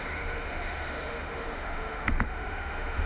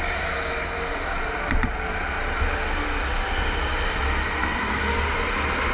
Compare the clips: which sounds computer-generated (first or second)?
first